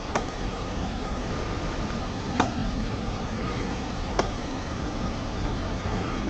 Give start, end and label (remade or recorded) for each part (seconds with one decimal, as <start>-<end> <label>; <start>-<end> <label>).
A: 0.0-1.3 remade; 1.3-2.0 recorded; 2.0-6.3 remade